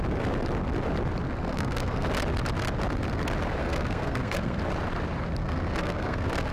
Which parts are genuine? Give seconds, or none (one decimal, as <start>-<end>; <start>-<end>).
0.0-1.4; 2.1-3.6; 4.6-5.4